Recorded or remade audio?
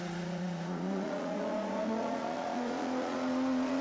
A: remade